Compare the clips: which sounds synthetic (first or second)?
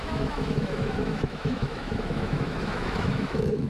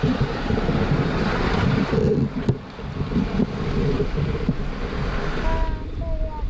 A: first